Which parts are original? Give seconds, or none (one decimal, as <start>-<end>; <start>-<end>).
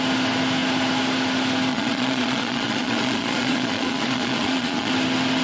0.0-1.7; 4.9-5.4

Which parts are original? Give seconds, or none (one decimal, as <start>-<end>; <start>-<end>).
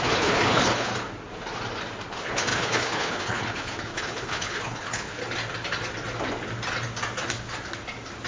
0.9-2.1; 5.2-8.3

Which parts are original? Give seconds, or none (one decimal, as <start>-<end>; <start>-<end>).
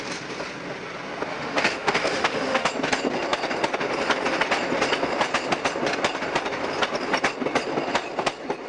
0.0-1.3; 2.7-8.7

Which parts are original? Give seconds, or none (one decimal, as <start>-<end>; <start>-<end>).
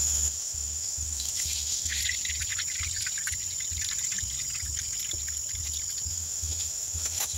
2.0-6.1